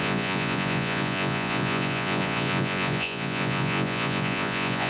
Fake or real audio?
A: fake